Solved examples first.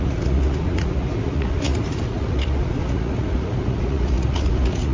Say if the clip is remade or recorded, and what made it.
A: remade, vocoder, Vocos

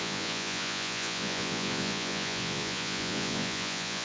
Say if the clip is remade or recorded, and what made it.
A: remade, vocoder, Vocos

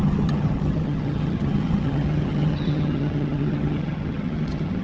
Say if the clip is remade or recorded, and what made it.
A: remade, vocoder, HiFi-GAN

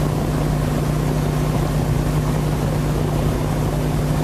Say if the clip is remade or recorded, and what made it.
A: recorded